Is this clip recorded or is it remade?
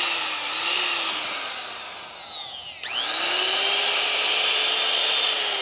recorded